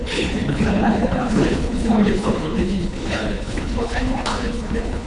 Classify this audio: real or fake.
fake